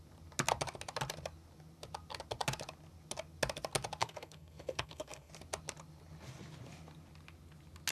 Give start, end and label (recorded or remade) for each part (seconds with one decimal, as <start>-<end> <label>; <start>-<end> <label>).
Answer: 0.0-4.0 recorded; 4.0-5.3 remade; 5.3-7.9 recorded